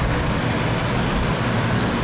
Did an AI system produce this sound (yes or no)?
no